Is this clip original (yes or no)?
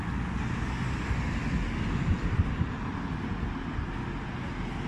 yes